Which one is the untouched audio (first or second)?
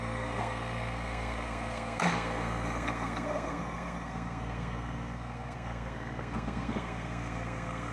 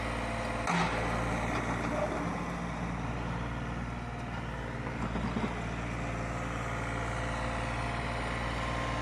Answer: second